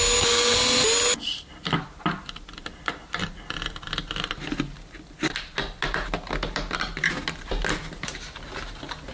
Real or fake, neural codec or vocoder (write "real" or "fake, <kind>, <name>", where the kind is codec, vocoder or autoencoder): real